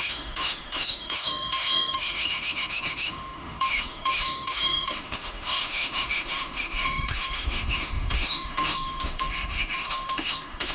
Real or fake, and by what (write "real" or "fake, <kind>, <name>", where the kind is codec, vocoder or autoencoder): fake, autoencoder, DAC-VAE